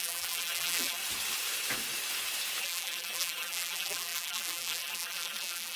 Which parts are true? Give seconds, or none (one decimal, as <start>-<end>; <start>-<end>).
1.0-2.6